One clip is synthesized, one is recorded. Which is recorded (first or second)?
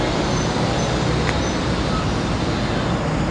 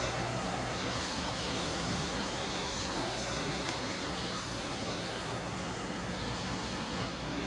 first